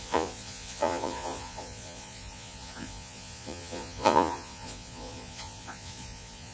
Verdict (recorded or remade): remade